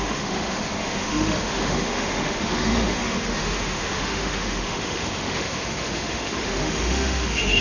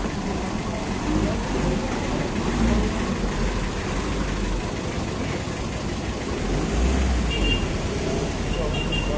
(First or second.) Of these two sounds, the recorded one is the second